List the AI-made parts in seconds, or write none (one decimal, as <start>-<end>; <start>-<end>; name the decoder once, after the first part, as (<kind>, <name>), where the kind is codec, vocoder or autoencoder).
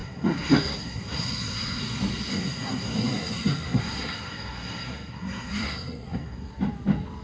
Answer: 0.0-1.8 (codec, SNAC); 2.3-6.5